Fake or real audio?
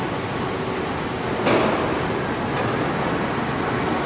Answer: real